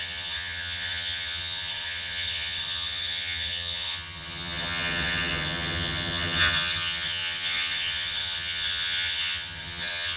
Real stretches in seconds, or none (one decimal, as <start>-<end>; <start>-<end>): none